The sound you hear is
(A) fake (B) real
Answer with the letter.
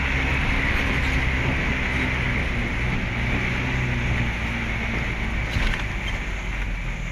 B